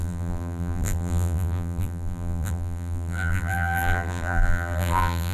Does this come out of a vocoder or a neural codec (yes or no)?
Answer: yes